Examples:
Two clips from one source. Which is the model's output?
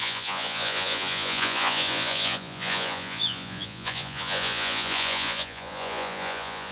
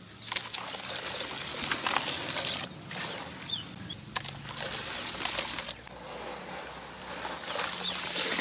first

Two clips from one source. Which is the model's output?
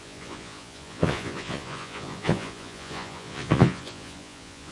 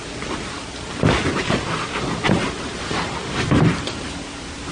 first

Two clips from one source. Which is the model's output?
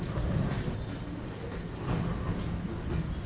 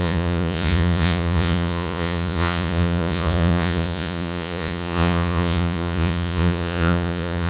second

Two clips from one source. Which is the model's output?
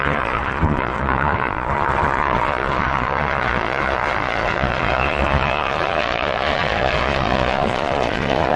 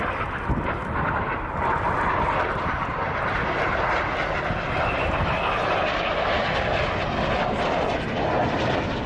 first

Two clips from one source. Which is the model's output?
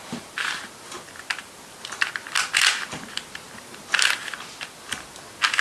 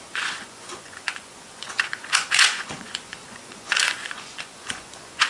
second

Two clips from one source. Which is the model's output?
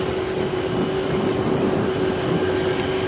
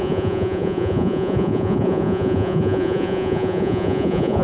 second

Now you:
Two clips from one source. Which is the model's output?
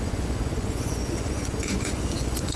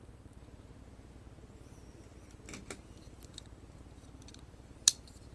first